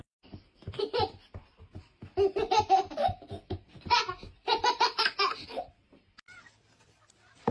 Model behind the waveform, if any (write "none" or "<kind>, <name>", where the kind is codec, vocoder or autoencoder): vocoder, BigVGAN v2